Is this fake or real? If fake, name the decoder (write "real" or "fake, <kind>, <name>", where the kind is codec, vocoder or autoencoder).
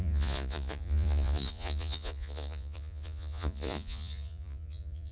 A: fake, vocoder, Vocos